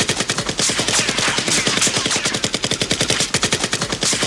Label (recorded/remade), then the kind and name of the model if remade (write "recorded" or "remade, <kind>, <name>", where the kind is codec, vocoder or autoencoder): recorded